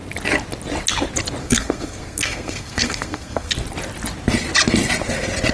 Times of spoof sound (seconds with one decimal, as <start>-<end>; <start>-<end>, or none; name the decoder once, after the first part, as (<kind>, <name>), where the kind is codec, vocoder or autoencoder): 1.4-3.5 (codec, SNAC)